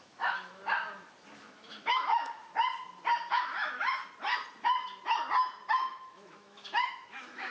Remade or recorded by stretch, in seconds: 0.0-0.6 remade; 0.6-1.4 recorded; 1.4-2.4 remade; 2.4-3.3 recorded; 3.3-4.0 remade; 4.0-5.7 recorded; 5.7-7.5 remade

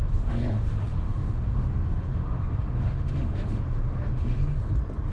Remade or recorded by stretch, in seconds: 0.0-4.4 remade; 4.4-5.1 recorded

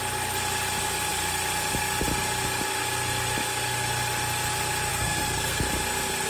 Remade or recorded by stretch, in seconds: 0.0-4.9 recorded; 4.9-5.6 remade; 5.6-6.3 recorded

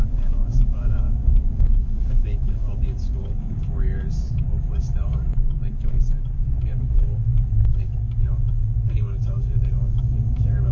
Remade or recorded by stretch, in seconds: 0.0-10.7 remade

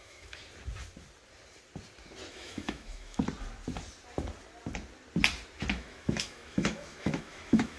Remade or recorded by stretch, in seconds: 0.0-0.4 remade; 0.4-2.3 recorded; 2.3-3.2 remade; 3.2-5.7 recorded; 5.7-7.8 remade

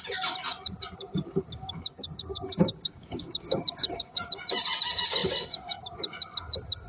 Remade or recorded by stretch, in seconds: 0.0-1.9 recorded; 1.9-4.3 remade; 4.3-6.9 recorded

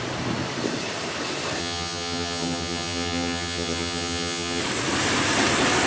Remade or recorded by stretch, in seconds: 0.0-1.6 recorded; 1.6-4.6 remade; 4.6-5.9 recorded